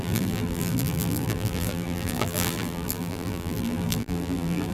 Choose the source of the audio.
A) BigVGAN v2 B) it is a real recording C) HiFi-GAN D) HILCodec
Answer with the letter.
A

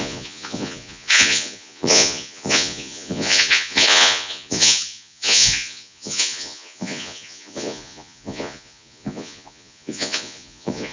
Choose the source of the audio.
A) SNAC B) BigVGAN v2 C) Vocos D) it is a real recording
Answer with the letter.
C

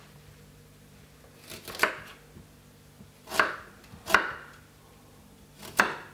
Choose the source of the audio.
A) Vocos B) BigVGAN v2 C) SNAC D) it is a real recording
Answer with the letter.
D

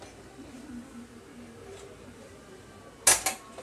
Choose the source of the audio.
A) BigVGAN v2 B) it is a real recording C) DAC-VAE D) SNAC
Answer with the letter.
B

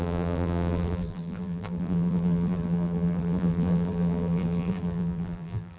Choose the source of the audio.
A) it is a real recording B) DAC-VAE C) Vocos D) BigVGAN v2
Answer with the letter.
D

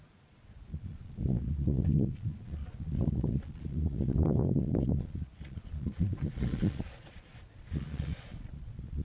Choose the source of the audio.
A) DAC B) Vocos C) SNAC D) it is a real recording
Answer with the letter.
B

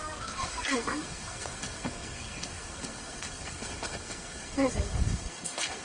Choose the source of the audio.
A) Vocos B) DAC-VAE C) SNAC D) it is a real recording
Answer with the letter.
C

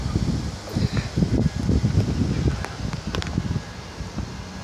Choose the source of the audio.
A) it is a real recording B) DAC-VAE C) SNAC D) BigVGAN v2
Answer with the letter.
A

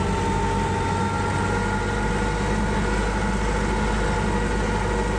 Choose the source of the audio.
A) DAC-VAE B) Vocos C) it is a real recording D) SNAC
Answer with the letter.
C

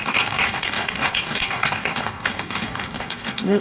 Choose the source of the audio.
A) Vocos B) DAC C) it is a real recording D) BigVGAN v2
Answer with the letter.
B